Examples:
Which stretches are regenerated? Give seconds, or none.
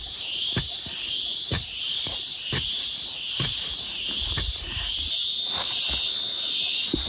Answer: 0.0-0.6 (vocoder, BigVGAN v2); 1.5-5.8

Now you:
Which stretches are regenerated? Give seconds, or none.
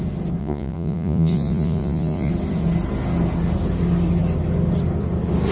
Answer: 0.4-2.3 (vocoder, Vocos)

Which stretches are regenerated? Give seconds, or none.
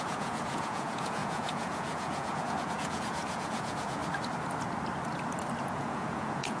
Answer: 0.0-4.0 (vocoder, Vocos); 5.6-6.6